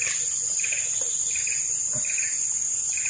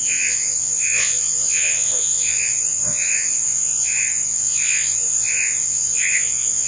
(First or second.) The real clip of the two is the first